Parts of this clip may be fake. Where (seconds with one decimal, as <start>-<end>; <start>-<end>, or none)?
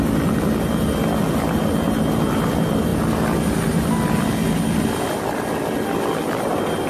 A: none